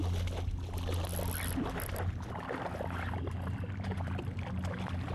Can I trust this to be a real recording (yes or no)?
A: yes